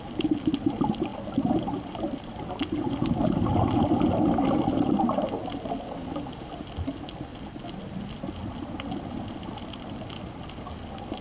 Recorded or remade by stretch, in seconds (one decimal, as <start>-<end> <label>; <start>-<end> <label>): 0.0-1.1 recorded; 1.1-2.3 remade; 2.3-8.4 recorded; 8.4-9.1 remade; 9.1-11.2 recorded